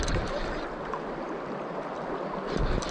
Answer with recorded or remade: recorded